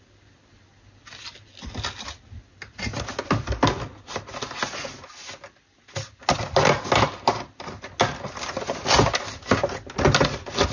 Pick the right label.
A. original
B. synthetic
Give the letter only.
A